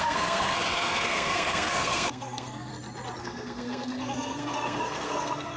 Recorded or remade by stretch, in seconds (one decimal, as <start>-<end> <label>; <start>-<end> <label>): 0.0-2.7 remade; 2.7-3.2 recorded; 3.2-5.6 remade